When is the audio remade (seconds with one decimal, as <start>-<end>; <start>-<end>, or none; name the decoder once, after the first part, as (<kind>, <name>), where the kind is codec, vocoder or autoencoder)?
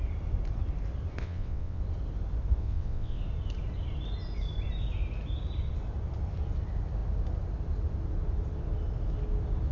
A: 1.2-1.8 (vocoder, WaveNeXt); 2.6-3.2